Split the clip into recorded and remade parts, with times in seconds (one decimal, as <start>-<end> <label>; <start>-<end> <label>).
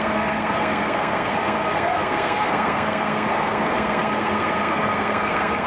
0.0-5.7 remade